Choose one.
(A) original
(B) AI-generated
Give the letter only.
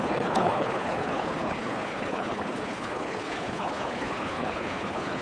B